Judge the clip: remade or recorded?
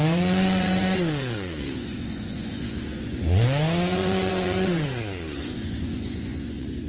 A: remade